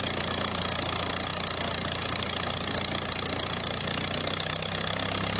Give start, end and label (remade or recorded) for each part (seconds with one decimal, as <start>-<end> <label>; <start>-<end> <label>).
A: 0.0-5.4 recorded